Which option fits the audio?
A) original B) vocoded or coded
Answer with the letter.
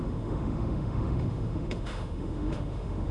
B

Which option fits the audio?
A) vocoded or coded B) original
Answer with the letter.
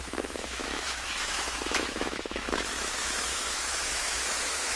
A